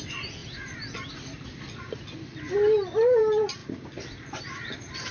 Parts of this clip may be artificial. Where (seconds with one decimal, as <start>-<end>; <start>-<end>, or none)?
none